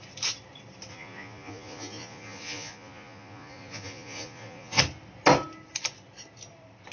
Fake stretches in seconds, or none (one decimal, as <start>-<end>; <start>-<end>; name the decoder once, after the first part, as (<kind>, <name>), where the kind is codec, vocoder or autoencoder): 0.9-4.8 (vocoder, Vocos)